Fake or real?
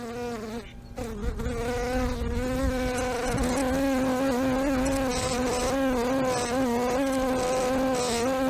real